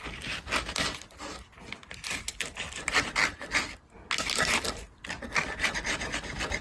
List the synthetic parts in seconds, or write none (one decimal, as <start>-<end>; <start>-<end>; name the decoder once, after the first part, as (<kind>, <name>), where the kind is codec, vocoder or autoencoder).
none